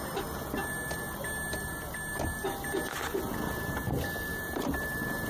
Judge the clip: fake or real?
real